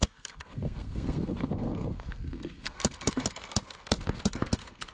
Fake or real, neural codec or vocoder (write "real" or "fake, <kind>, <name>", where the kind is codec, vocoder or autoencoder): fake, codec, SNAC